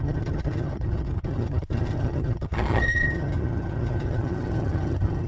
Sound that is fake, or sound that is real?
fake